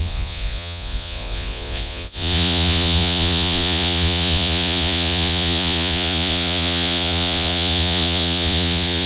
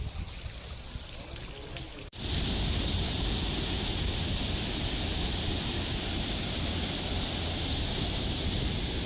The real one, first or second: second